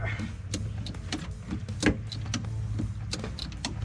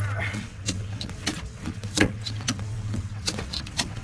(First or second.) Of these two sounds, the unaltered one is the first